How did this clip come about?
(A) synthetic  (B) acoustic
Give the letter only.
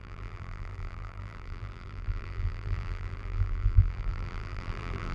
A